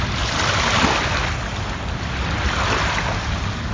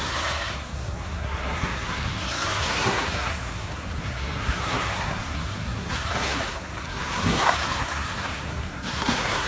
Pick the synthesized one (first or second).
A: second